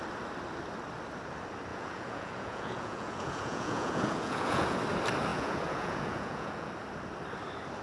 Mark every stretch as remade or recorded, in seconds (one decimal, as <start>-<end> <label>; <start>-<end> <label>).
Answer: 0.0-1.7 recorded; 1.7-4.8 remade; 4.8-5.3 recorded; 5.3-6.7 remade; 6.7-7.8 recorded